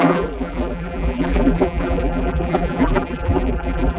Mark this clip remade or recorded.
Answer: remade